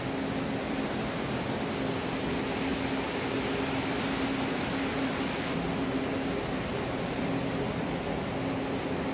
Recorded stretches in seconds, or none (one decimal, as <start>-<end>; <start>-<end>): 0.0-9.1